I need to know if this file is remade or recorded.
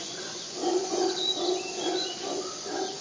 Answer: remade